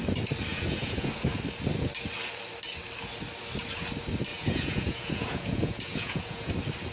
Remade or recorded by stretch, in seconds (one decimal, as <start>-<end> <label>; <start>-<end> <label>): 0.0-0.5 recorded; 0.5-1.1 remade; 1.1-4.3 recorded; 4.3-6.5 remade; 6.5-6.9 recorded